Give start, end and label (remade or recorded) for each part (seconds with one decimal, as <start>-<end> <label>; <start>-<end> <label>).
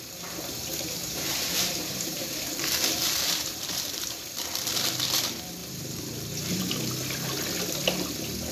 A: 0.0-0.6 recorded; 0.6-4.2 remade; 4.2-5.6 recorded; 5.6-6.6 remade; 6.6-8.5 recorded